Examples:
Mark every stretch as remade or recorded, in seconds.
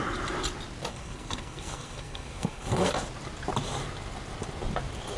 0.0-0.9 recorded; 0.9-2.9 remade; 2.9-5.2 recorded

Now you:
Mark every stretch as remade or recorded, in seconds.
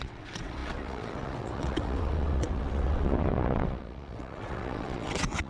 0.0-5.5 remade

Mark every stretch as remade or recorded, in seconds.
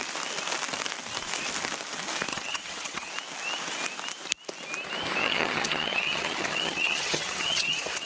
0.0-2.3 recorded; 2.3-3.1 remade; 3.1-5.2 recorded; 5.2-8.1 remade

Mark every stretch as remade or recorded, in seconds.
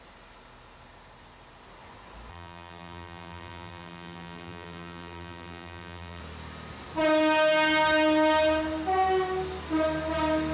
0.0-2.3 recorded; 2.3-6.2 remade; 6.2-10.5 recorded